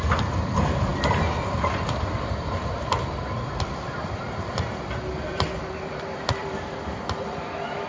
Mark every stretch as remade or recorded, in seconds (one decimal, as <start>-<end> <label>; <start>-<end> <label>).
0.0-7.9 remade